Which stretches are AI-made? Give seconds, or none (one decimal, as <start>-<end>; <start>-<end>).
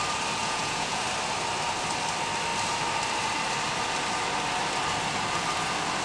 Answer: 0.4-1.0